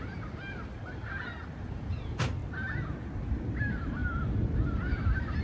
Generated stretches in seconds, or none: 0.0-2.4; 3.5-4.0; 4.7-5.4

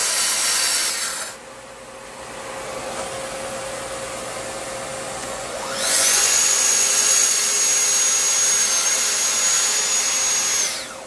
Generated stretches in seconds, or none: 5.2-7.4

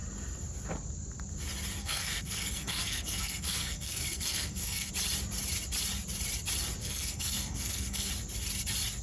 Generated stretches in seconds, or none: 1.8-4.9; 6.8-8.1